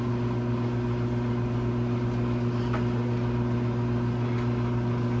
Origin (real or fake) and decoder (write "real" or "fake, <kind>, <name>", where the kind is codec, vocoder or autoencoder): real